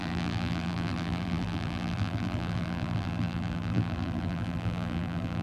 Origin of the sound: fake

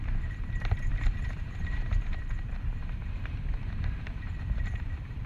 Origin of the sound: fake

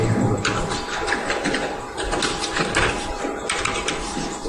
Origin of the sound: fake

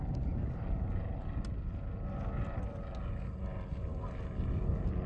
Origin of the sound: real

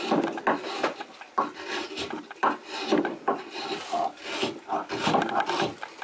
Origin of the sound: real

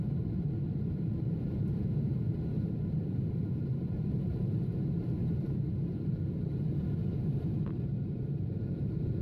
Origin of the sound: fake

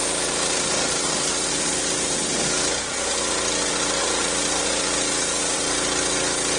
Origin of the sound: fake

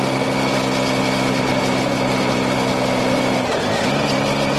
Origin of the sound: real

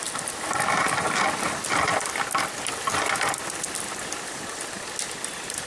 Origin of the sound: real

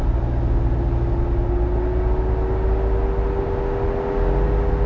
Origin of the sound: real